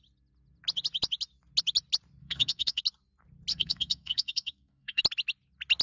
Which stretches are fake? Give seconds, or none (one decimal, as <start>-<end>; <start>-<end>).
2.2-2.8; 3.5-5.0